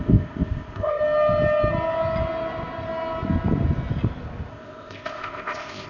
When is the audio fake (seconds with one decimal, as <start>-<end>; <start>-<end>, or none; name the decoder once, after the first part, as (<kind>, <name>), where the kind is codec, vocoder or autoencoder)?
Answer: 0.0-1.0 (codec, ZipCodec); 4.5-5.9